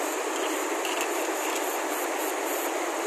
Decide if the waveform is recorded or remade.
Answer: recorded